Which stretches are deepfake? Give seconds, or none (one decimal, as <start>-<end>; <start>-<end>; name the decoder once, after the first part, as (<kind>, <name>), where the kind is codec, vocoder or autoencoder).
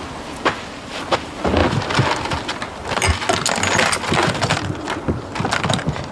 none